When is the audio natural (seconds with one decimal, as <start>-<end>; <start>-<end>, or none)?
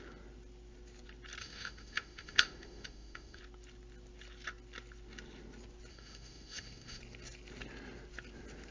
0.0-1.4; 3.4-5.9; 7.0-8.7